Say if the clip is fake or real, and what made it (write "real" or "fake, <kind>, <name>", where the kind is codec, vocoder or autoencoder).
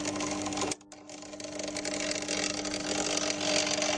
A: real